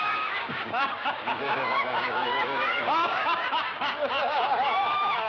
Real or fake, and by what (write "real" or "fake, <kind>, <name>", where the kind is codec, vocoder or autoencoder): fake, codec, DAC